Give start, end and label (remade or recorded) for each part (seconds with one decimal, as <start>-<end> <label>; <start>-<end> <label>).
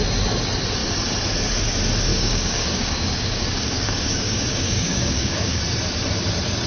0.0-2.1 recorded; 2.1-5.6 remade; 5.6-6.7 recorded